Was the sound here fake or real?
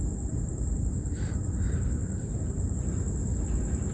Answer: real